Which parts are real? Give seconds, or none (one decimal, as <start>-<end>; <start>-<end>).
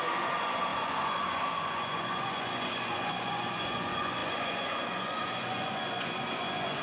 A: none